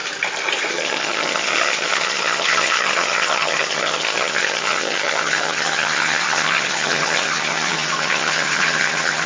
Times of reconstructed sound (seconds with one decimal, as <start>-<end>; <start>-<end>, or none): 0.7-9.3